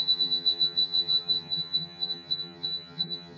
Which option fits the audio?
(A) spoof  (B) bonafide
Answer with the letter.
A